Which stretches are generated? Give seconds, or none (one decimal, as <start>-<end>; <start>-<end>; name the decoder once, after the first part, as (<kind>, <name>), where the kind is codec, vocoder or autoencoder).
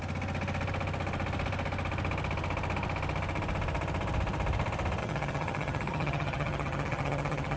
5.0-7.6 (vocoder, HiFi-GAN)